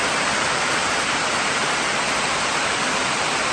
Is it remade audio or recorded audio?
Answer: remade